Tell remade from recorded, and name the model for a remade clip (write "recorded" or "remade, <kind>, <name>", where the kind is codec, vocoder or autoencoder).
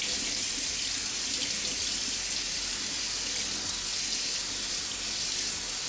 recorded